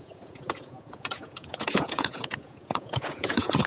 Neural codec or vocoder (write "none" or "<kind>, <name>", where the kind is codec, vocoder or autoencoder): vocoder, Vocos